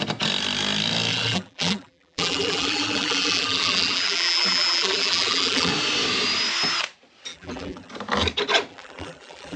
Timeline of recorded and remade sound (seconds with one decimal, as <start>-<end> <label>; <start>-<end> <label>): 0.0-1.1 recorded; 1.1-5.7 remade; 5.7-7.3 recorded; 7.3-7.9 remade; 7.9-8.7 recorded; 8.7-9.6 remade